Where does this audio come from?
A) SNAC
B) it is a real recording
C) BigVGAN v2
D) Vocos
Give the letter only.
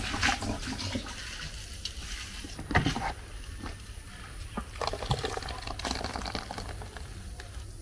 B